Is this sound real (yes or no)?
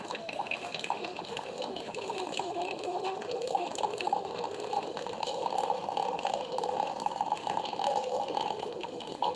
no